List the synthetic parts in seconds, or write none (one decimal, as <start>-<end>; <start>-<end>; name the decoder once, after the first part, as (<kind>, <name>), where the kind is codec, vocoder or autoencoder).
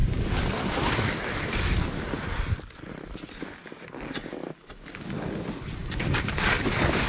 0.0-3.8 (vocoder, BigVGAN v2); 5.8-7.1